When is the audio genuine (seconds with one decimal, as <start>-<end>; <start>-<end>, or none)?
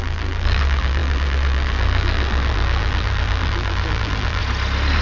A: 4.4-5.0